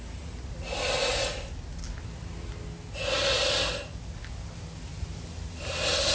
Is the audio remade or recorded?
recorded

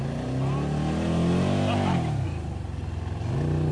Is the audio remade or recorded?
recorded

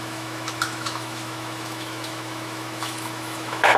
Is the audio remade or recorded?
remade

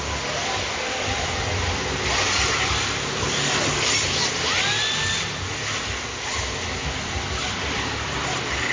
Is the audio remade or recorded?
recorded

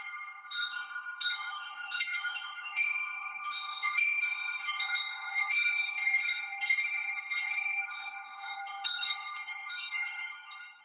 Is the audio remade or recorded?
remade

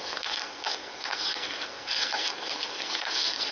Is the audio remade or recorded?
remade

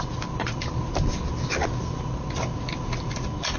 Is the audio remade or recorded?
recorded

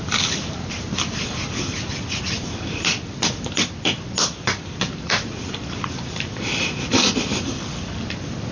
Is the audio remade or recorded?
remade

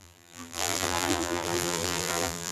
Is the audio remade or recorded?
remade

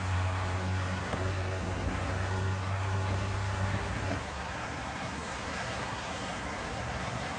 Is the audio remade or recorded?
remade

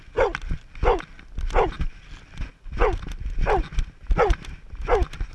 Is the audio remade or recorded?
recorded